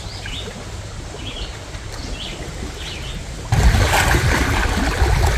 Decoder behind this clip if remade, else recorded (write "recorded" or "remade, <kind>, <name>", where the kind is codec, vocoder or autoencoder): recorded